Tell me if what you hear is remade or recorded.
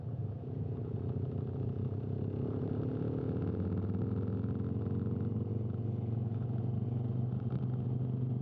remade